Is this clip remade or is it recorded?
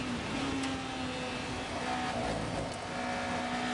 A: recorded